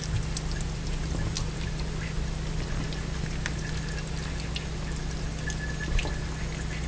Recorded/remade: recorded